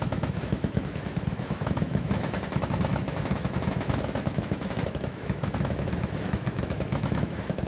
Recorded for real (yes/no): no